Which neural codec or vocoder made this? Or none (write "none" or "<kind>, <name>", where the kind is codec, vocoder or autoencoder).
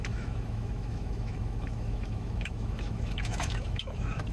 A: autoencoder, DAC-VAE